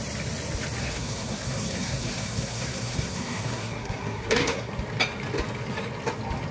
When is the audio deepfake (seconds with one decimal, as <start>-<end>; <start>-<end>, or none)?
0.8-4.7